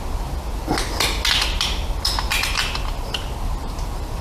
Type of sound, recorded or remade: recorded